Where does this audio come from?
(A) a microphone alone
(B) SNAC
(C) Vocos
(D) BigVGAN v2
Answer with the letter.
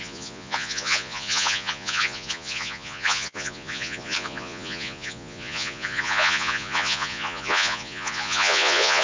C